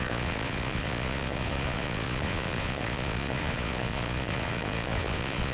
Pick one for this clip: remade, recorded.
remade